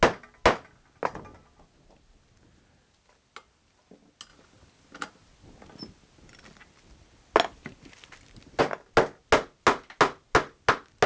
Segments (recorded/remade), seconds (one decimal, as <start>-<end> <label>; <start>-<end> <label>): 0.0-11.1 recorded